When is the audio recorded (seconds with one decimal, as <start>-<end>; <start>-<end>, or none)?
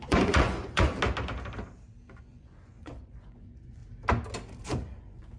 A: 0.9-2.2; 3.8-5.0